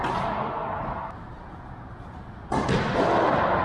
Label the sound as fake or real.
real